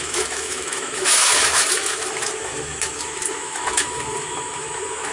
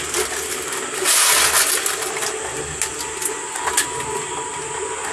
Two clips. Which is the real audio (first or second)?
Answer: second